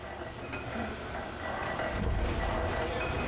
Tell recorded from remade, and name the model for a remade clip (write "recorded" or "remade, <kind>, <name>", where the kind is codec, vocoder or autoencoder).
recorded